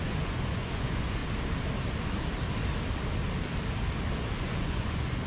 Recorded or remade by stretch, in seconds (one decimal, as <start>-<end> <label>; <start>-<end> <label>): 0.0-1.2 remade; 1.2-4.4 recorded; 4.4-5.3 remade

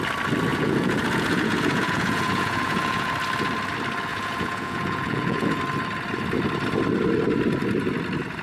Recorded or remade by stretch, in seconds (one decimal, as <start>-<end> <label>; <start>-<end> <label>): 0.0-0.5 recorded; 0.5-3.1 remade; 3.1-4.1 recorded; 4.1-5.6 remade; 5.6-8.4 recorded